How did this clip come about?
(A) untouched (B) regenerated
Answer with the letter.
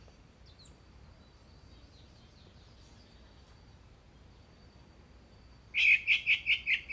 A